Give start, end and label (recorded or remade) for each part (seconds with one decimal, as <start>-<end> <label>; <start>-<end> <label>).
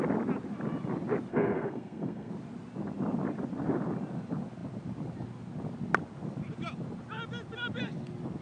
0.0-1.3 recorded; 1.3-2.3 remade; 2.3-8.4 recorded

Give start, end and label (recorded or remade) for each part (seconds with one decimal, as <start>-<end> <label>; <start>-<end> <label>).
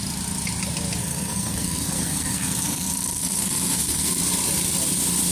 0.0-1.0 recorded; 1.0-4.2 remade; 4.2-5.3 recorded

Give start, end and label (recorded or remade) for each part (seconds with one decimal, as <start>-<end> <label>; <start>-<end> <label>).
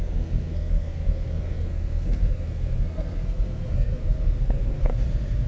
0.0-4.9 remade; 4.9-5.5 recorded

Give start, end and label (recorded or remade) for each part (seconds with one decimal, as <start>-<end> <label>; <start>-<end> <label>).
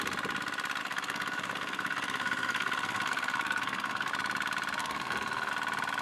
0.0-0.8 recorded; 0.8-4.1 remade; 4.1-4.8 recorded; 4.8-5.5 remade; 5.5-6.0 recorded